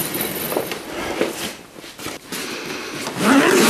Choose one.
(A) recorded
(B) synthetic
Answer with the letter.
B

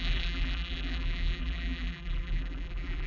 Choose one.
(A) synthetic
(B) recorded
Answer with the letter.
A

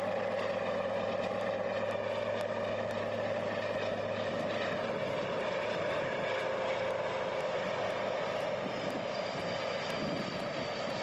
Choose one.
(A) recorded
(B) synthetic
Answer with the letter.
A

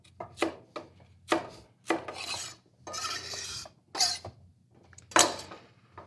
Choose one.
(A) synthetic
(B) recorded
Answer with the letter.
B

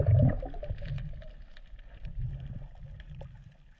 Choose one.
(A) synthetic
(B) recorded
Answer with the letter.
A